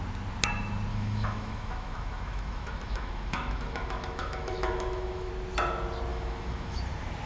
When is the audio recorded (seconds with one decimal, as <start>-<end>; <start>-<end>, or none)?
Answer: 0.0-0.9; 5.3-6.1; 6.8-7.3

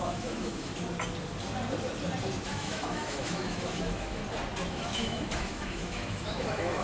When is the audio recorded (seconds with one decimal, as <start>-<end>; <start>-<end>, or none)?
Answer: 0.7-2.5; 4.2-4.7

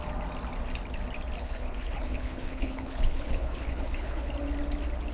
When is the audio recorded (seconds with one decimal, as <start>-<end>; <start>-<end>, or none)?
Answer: 0.0-1.4; 4.3-5.1

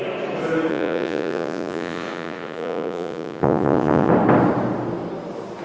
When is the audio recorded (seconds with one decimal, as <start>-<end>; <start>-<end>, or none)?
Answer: 0.0-0.7; 4.1-5.6

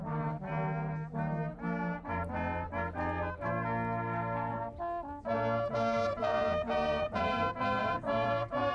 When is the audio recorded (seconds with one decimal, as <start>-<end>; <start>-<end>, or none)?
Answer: 0.0-6.1; 7.2-7.8

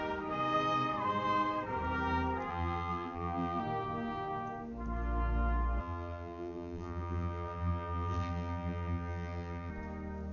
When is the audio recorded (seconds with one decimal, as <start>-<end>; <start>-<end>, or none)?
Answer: 0.0-2.5; 3.6-5.8; 9.7-10.3